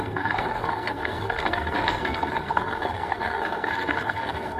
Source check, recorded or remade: remade